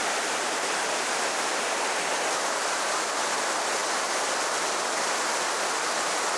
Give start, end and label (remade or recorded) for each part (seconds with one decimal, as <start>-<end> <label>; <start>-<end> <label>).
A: 0.0-6.4 recorded